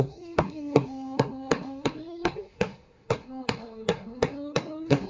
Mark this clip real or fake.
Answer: fake